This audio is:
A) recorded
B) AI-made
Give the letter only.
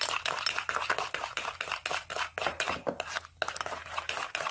A